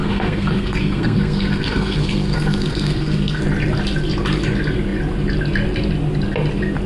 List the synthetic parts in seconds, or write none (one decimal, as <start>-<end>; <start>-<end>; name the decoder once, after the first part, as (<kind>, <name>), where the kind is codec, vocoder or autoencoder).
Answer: 0.0-3.4 (codec, SNAC)